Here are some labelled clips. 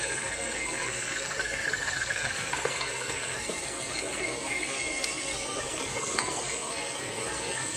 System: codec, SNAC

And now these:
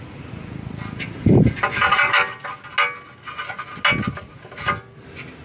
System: none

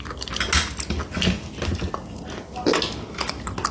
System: none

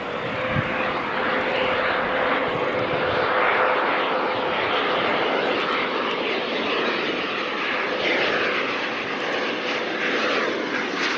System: none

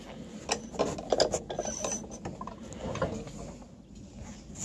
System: none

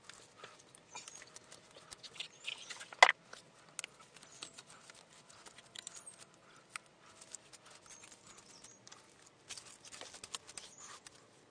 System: none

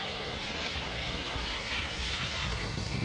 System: codec, SNAC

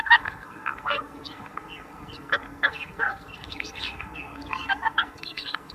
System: codec, SNAC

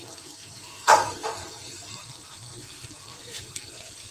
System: codec, SNAC